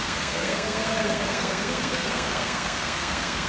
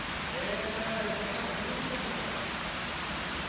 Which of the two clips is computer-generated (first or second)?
first